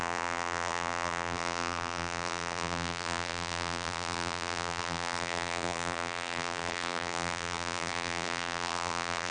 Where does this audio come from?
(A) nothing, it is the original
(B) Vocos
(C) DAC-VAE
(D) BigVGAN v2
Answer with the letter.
D